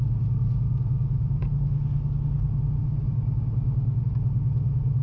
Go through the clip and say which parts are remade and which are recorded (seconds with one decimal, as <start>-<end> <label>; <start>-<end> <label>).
0.0-5.0 recorded